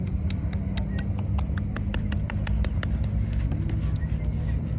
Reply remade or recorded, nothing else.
recorded